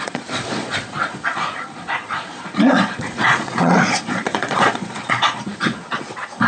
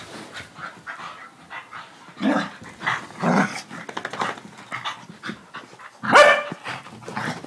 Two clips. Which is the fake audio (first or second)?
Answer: first